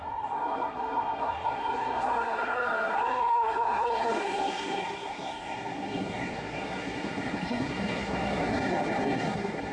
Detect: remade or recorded remade